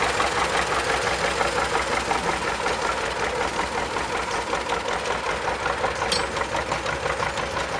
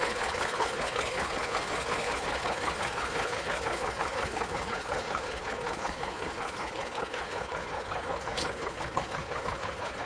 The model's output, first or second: second